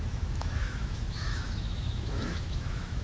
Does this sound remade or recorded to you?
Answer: remade